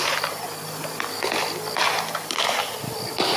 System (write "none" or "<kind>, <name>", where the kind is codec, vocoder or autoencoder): none